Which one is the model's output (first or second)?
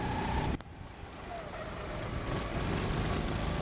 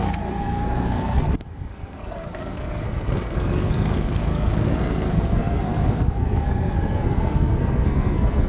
second